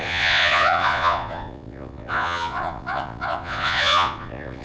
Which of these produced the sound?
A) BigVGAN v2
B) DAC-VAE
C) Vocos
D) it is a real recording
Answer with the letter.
C